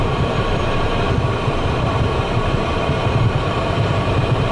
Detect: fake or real fake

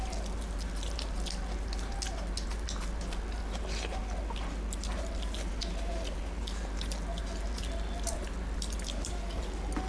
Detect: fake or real real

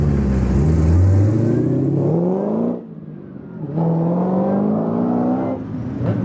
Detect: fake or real real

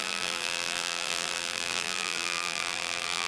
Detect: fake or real fake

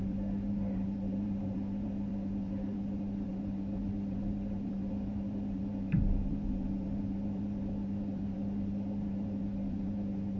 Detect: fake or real fake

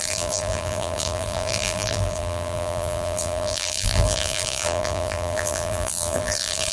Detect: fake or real fake